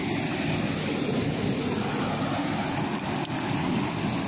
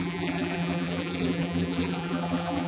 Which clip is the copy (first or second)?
second